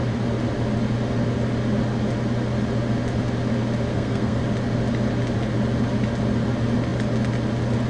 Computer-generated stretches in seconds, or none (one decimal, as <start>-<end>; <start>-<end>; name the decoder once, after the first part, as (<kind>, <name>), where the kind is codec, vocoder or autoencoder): 3.9-4.4 (codec, SNAC)